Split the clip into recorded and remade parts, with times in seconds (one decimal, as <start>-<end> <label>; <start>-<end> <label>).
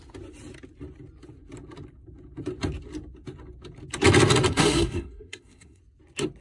0.0-4.5 recorded; 4.5-5.8 remade; 5.8-6.4 recorded